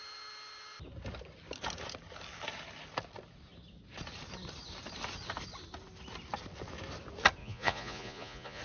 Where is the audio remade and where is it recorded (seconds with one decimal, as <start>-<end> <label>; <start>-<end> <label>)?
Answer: 0.0-7.4 recorded; 7.4-8.6 remade